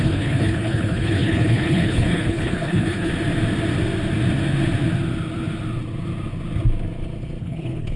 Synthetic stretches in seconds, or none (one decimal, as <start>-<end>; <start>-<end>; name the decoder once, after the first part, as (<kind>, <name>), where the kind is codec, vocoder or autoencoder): 0.0-3.1 (codec, HILCodec); 7.4-8.0